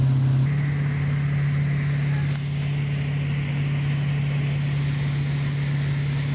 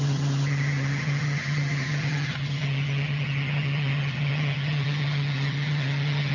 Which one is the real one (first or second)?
first